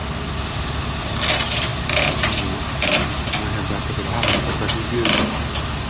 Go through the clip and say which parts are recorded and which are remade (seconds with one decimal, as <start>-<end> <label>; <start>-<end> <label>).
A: 0.0-5.9 recorded